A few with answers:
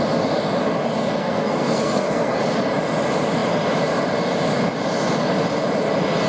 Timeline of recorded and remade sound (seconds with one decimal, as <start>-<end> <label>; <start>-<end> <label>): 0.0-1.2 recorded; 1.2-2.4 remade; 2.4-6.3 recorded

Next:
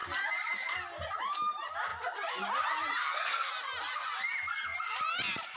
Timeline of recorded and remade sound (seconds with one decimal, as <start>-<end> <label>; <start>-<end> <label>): 0.0-3.0 recorded; 3.0-3.5 remade; 3.5-5.6 recorded

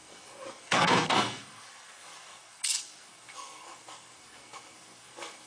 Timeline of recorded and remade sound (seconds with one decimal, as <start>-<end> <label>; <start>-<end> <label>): 0.0-5.5 remade

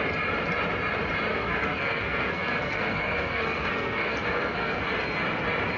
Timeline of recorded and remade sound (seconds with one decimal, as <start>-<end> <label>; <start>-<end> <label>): 0.0-1.3 recorded; 1.3-4.8 remade; 4.8-5.8 recorded

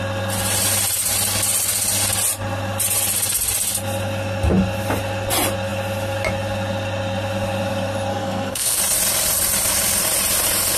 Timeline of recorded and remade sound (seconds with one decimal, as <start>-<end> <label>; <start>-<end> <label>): 0.0-8.1 recorded; 8.1-8.8 remade; 8.8-10.8 recorded